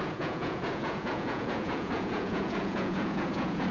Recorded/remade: remade